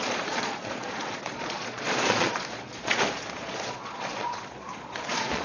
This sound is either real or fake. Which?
fake